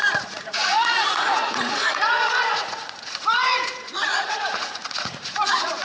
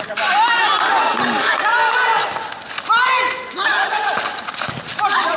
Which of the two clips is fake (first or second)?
first